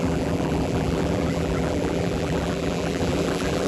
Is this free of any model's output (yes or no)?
no